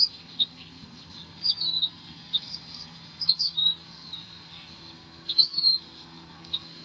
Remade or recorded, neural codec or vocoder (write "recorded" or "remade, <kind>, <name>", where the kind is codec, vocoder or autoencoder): remade, codec, SNAC